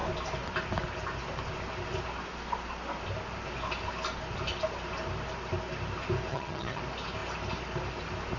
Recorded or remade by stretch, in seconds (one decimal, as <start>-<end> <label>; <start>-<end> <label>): 0.0-6.3 recorded; 6.3-6.8 remade; 6.8-8.4 recorded